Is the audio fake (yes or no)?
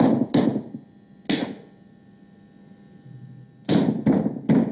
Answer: no